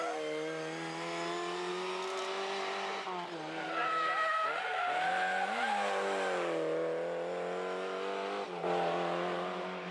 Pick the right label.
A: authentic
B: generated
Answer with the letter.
A